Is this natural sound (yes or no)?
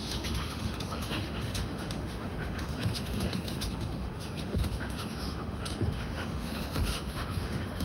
no